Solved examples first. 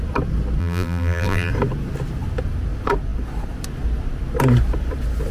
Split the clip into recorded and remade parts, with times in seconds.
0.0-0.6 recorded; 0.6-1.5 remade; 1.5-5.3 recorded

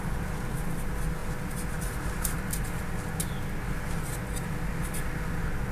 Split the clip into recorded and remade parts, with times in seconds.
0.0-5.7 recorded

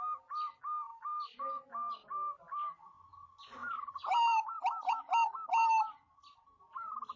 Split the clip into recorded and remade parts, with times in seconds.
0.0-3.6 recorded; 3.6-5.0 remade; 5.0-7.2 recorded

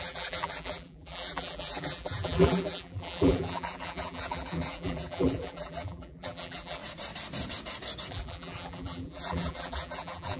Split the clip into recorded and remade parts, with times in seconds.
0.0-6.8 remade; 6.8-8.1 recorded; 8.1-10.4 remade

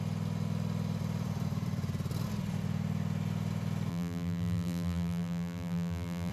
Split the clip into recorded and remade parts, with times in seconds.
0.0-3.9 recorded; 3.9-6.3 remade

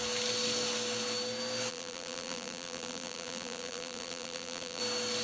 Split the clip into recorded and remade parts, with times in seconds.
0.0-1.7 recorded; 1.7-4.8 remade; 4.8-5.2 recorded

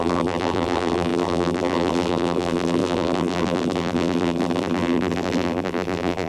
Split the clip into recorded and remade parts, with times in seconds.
0.0-6.3 remade